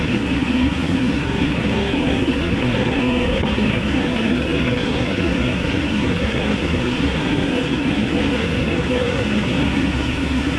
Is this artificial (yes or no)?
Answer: yes